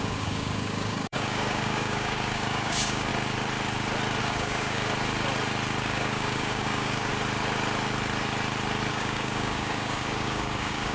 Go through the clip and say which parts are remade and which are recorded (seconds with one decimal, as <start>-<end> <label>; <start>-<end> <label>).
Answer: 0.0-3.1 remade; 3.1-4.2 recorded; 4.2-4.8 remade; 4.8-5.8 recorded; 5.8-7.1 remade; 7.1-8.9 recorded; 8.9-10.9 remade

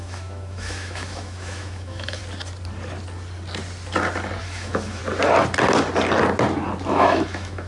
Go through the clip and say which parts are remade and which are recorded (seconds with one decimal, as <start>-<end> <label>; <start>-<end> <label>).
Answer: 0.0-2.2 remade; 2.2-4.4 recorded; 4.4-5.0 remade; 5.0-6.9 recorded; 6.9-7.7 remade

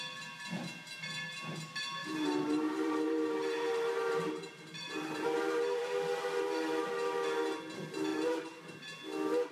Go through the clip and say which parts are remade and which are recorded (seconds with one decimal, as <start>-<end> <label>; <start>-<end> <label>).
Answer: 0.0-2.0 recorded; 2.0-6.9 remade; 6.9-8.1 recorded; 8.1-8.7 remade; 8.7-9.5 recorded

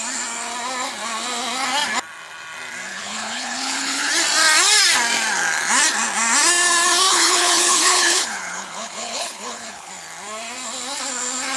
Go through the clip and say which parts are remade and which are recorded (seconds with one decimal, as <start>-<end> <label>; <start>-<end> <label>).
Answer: 0.0-2.9 recorded; 2.9-4.1 remade; 4.1-7.1 recorded; 7.1-9.9 remade; 9.9-11.6 recorded

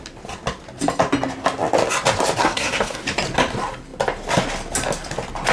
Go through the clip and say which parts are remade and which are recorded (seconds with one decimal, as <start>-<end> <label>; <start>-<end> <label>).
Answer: 0.0-2.4 recorded; 2.4-3.0 remade; 3.0-5.5 recorded